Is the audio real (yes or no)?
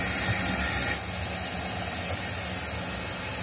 yes